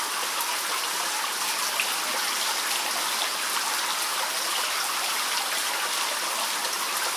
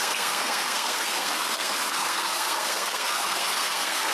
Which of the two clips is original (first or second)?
first